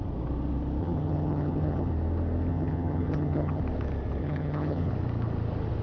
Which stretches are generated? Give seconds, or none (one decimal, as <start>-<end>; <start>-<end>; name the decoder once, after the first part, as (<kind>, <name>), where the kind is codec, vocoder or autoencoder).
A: 0.8-1.9 (vocoder, HiFi-GAN); 2.5-3.6; 4.2-4.9